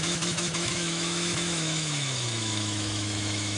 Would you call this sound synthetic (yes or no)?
yes